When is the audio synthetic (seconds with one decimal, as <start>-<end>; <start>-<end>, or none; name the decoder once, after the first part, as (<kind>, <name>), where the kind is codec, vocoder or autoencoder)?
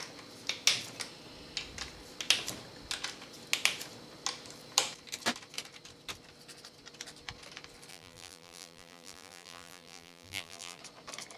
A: 7.9-10.8 (vocoder, BigVGAN v2)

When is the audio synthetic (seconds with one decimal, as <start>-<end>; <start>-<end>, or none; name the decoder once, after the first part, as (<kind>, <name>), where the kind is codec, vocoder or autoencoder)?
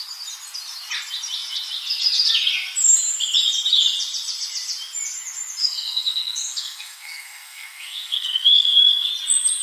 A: 5.6-9.1 (codec, SNAC)